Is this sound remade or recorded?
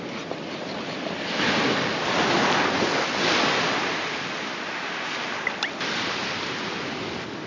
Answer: recorded